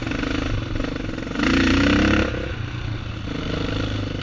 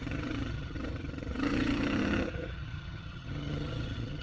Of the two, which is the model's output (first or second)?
second